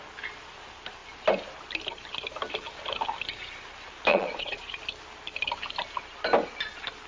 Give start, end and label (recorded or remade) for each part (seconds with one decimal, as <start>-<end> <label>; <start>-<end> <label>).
0.0-4.1 recorded; 4.1-4.8 remade; 4.8-7.1 recorded